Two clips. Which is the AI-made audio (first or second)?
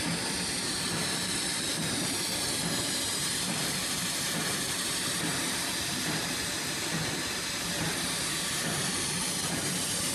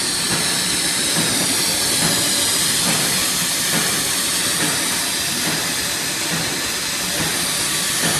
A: first